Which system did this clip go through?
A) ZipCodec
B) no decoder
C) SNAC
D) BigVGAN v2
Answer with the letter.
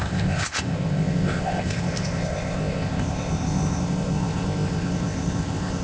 A